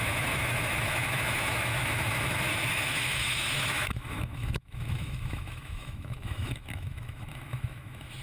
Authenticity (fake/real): fake